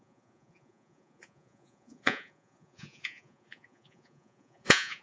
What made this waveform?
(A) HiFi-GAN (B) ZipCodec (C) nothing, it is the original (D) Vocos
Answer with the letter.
D